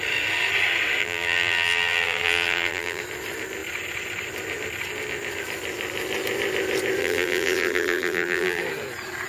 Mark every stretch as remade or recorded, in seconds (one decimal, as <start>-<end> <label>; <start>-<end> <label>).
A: 0.0-1.0 recorded; 1.0-3.0 remade; 3.0-7.0 recorded; 7.0-8.6 remade; 8.6-9.3 recorded